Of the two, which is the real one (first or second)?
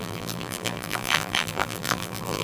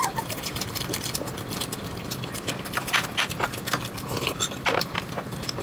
second